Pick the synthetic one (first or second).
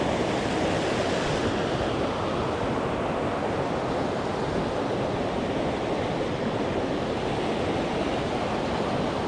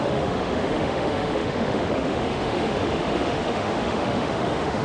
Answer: second